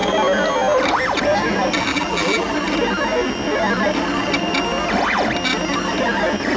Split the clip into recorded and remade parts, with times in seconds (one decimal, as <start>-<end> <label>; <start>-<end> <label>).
0.0-1.9 recorded; 1.9-2.5 remade; 2.5-6.6 recorded